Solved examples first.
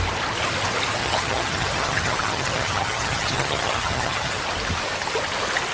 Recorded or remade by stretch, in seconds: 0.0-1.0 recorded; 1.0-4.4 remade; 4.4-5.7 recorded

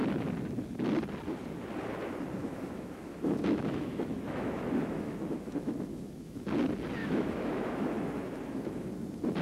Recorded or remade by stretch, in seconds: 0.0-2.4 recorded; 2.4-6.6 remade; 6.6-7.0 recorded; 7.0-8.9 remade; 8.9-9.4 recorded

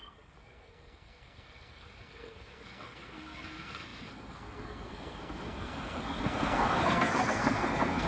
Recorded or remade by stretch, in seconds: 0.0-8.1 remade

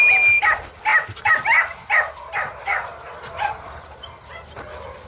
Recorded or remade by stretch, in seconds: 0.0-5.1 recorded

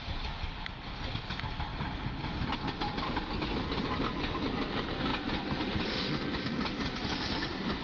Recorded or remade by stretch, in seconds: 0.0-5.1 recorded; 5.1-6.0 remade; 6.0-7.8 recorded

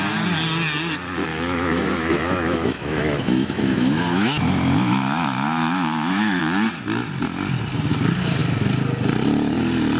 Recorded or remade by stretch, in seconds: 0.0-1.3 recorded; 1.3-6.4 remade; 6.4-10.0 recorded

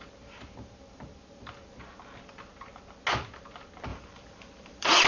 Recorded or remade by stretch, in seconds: 0.0-3.9 recorded; 3.9-5.1 remade